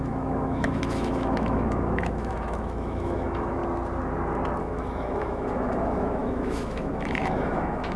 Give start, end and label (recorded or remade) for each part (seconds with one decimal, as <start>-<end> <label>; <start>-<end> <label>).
0.0-3.6 remade; 3.6-4.6 recorded; 4.6-8.0 remade